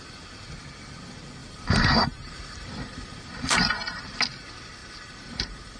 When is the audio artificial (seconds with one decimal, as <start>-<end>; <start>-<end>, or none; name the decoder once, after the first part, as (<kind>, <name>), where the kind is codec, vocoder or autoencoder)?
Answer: 1.4-4.2 (vocoder, BigVGAN v2); 4.8-5.8